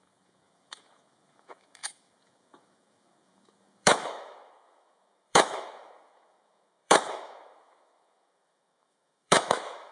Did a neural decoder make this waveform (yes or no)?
yes